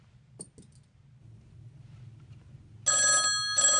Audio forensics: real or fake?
real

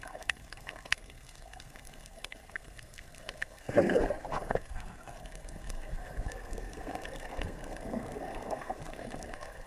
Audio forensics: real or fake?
fake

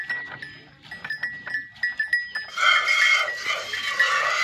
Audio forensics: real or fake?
real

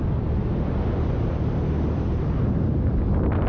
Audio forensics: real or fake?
real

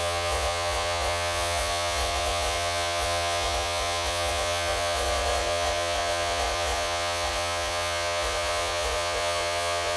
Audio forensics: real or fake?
fake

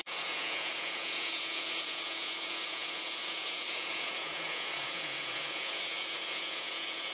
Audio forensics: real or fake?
fake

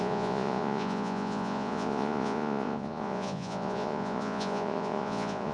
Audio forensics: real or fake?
fake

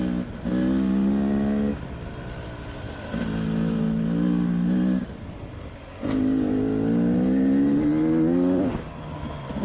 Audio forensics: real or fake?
real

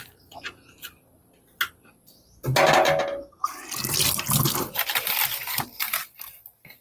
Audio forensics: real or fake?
real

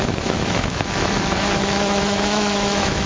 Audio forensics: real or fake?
fake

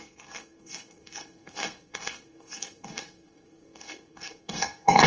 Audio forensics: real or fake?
fake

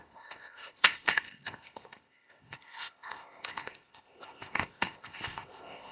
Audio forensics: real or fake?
fake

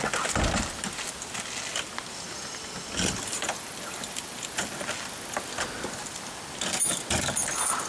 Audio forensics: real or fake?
real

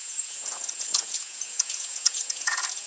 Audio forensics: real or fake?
fake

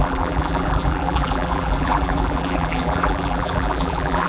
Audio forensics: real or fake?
fake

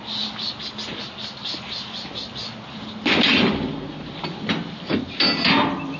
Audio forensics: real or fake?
real